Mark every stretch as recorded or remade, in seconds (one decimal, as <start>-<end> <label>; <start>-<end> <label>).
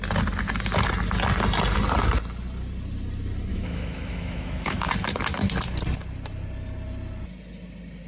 0.0-3.5 recorded; 3.5-4.9 remade; 4.9-8.1 recorded